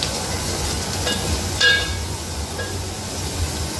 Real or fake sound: fake